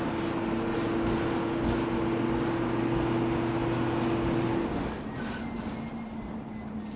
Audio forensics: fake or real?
real